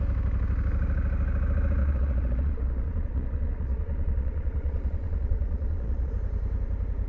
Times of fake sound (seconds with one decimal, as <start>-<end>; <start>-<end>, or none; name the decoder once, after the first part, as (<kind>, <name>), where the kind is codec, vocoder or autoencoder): 1.8-6.1 (vocoder, Vocos)